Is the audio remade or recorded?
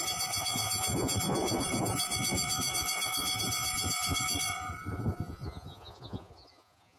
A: remade